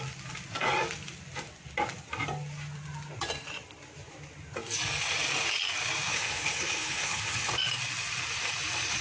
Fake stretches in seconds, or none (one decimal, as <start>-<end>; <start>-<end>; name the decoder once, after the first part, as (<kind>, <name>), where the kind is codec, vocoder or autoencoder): 6.1-7.5 (codec, HILCodec)